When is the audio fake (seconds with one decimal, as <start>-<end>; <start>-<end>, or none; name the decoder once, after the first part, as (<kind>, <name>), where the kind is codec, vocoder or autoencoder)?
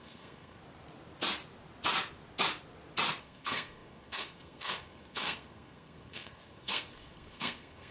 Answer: 0.0-0.6 (codec, SNAC); 3.2-7.9